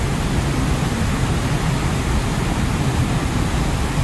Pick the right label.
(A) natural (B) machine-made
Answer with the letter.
A